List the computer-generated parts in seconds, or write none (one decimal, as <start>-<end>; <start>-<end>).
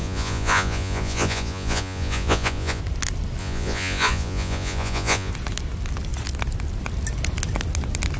0.0-2.8; 3.4-5.3